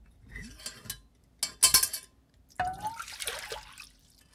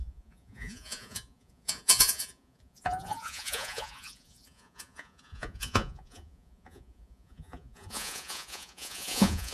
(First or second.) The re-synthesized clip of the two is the second